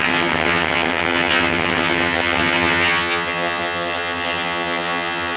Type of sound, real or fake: fake